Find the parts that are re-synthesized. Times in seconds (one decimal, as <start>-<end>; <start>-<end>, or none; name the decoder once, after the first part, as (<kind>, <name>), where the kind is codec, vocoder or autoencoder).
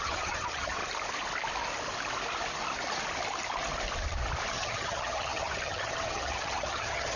0.0-0.8 (vocoder, HiFi-GAN); 4.5-7.2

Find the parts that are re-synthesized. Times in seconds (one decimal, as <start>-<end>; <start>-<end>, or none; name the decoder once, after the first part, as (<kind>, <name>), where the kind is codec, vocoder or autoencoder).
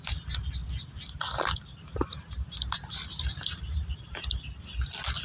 none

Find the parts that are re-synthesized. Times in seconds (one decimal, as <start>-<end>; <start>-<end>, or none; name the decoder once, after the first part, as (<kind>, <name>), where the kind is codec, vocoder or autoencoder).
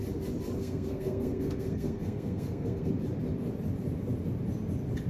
0.6-2.9 (codec, SNAC)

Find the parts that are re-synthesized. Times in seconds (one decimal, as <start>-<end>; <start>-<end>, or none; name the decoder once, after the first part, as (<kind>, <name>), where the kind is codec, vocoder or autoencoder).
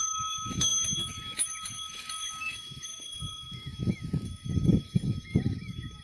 0.0-6.0 (autoencoder, DAC-VAE)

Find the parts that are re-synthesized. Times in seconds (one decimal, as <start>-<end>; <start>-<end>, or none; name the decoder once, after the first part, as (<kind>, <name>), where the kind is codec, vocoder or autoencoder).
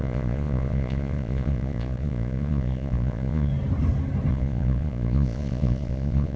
0.0-3.5 (vocoder, Vocos); 4.3-6.4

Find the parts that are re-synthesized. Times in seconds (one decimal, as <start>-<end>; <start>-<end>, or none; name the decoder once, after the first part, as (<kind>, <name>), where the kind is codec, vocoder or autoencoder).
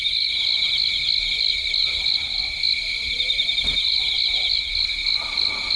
none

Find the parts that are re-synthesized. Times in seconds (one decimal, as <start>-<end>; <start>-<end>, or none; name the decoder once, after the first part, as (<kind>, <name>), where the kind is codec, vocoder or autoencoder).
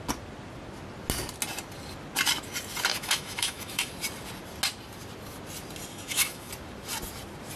2.9-3.9 (autoencoder, DAC-VAE); 5.9-6.5